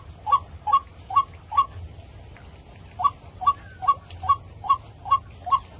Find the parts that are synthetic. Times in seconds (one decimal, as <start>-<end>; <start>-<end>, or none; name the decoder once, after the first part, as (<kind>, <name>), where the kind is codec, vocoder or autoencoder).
none